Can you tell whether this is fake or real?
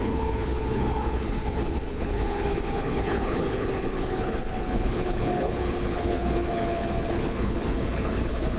fake